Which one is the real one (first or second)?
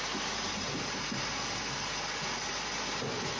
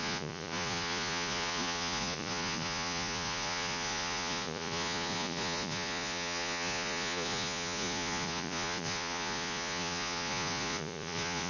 first